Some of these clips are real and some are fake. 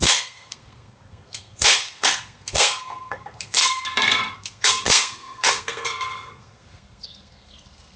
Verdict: fake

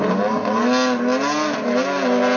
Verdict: real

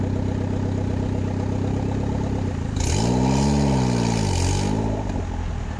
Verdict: real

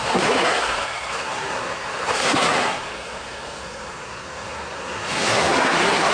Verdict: fake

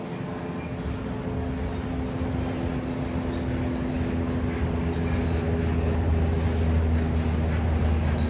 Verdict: real